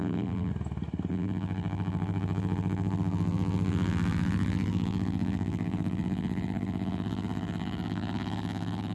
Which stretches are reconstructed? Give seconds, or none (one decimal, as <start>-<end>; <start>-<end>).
0.0-0.5; 1.1-8.9